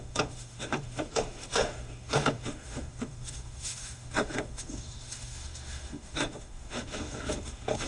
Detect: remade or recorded remade